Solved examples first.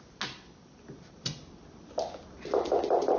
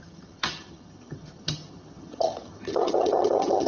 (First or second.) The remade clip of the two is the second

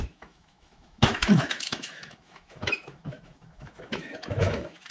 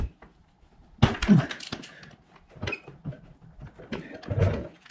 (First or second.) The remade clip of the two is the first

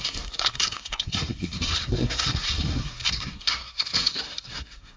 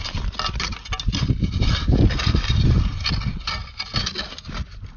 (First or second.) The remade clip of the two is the first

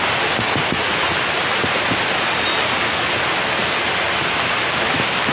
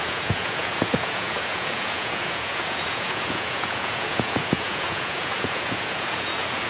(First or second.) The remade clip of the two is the second